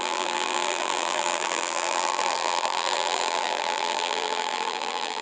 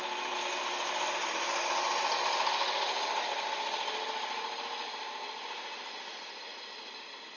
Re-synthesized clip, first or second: first